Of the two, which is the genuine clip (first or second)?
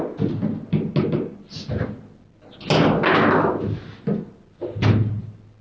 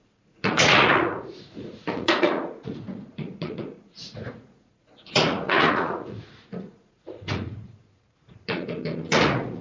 first